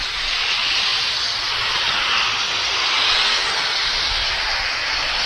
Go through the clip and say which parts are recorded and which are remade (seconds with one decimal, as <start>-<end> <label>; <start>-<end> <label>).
0.0-5.3 recorded